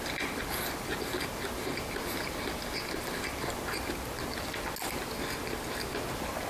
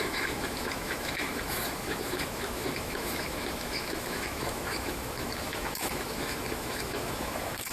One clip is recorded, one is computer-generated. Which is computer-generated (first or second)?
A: second